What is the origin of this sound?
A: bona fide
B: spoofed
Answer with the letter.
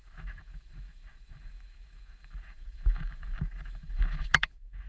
B